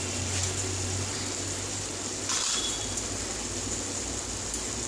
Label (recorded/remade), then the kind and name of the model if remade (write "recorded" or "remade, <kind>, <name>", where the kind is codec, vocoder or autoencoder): recorded